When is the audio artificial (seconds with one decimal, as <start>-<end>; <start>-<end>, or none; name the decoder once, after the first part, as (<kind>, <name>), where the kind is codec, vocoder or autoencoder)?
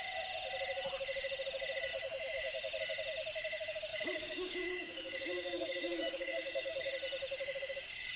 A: 3.9-6.9 (codec, DAC)